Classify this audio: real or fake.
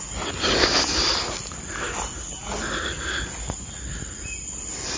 real